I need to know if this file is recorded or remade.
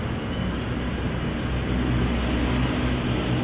recorded